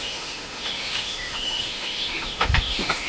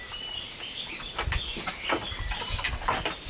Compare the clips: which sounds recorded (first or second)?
second